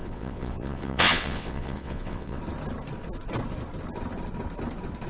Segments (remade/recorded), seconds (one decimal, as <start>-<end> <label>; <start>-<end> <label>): 0.0-2.4 remade; 2.4-5.1 recorded